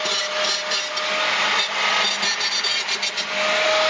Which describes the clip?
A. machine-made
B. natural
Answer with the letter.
B